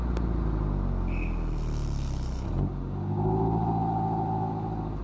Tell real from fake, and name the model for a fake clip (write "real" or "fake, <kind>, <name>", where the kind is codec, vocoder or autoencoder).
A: real